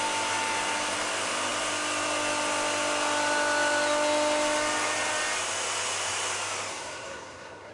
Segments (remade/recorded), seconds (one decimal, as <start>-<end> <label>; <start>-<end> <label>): 0.0-6.7 recorded; 6.7-7.7 remade